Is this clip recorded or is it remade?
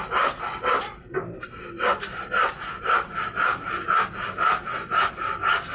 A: recorded